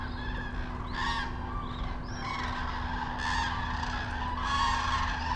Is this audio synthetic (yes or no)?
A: no